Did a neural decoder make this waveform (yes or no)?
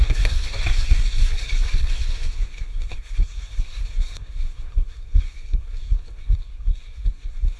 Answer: yes